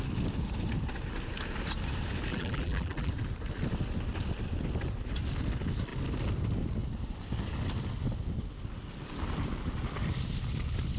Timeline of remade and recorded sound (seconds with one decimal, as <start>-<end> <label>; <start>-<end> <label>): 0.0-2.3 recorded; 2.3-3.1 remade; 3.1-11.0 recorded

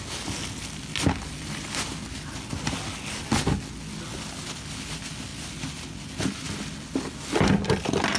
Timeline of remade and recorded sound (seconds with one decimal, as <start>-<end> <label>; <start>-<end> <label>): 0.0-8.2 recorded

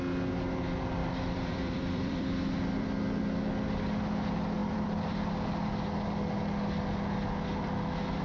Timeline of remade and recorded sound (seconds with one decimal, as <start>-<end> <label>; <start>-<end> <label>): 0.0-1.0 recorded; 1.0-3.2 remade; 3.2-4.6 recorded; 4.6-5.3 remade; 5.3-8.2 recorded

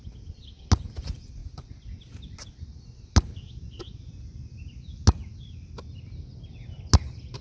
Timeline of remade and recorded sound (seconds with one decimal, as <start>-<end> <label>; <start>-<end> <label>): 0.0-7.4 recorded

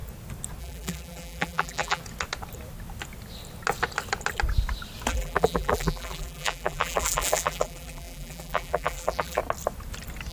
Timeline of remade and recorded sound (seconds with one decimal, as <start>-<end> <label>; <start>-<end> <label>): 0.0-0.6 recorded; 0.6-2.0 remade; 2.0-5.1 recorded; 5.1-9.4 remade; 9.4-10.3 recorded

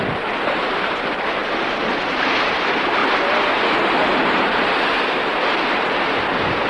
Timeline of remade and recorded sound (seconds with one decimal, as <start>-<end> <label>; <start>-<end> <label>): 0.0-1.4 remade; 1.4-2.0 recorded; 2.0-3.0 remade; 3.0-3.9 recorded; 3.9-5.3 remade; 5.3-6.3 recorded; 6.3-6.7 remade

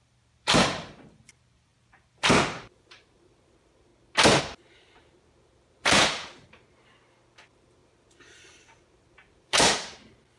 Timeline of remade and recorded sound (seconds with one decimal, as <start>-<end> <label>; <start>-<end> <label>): 0.0-3.9 remade; 3.9-4.4 recorded; 4.4-10.4 remade